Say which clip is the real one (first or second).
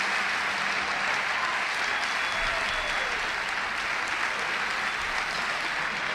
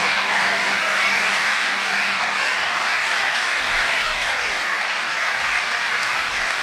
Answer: first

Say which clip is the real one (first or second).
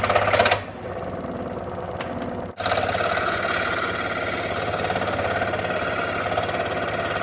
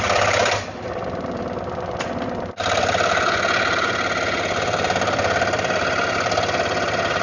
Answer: first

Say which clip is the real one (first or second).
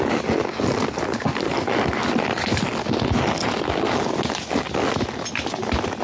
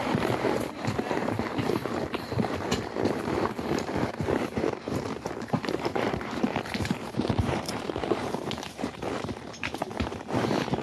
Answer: first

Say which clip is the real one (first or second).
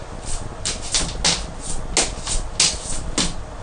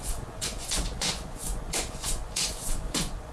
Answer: first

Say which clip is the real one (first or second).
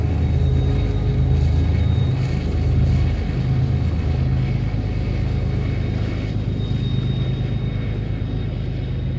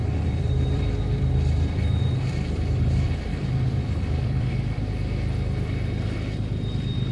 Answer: first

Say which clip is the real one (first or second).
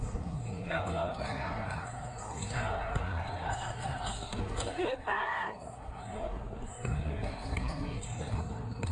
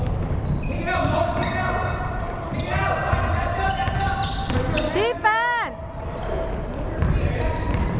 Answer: second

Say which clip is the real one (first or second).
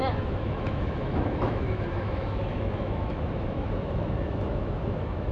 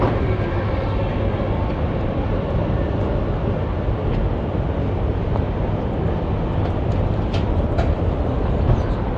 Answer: second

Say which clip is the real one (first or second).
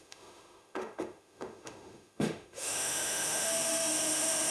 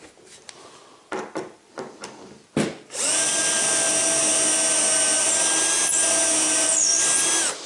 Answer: second